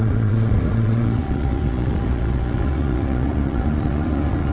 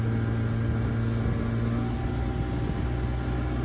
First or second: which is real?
second